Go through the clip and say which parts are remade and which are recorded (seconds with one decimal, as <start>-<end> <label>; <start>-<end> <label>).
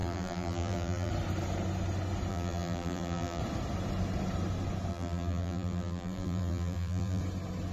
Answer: 0.0-1.1 remade; 1.1-2.3 recorded; 2.3-3.4 remade; 3.4-4.9 recorded; 4.9-7.2 remade; 7.2-7.7 recorded